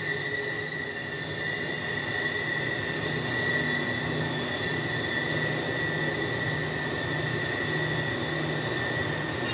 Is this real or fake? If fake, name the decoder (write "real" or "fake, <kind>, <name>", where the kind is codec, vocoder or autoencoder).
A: real